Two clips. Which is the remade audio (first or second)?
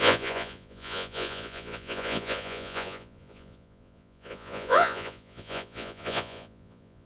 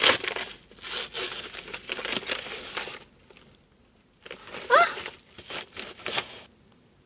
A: first